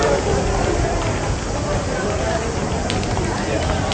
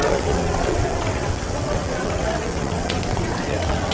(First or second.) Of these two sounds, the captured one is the first